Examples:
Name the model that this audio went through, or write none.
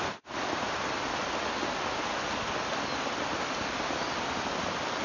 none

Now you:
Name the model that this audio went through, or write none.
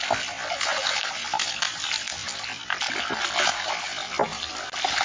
none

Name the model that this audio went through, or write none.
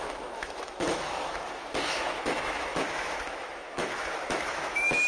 autoencoder, DAC-VAE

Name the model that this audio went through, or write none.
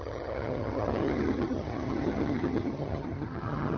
vocoder, HiFi-GAN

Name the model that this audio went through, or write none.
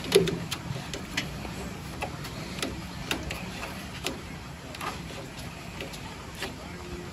vocoder, BigVGAN v2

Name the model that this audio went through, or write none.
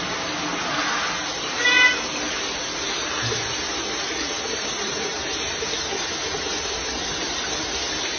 none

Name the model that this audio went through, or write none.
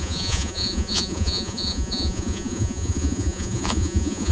vocoder, Vocos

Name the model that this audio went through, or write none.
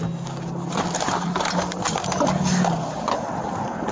none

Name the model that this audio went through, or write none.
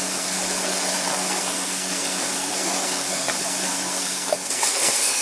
codec, SNAC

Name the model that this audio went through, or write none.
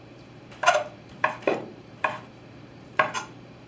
vocoder, BigVGAN v2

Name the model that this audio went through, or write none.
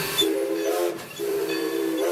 vocoder, BigVGAN v2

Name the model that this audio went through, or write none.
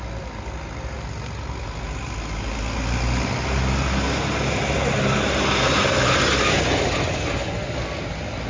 none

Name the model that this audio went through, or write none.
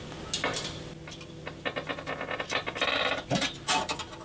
none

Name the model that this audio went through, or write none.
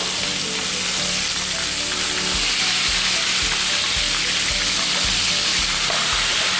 none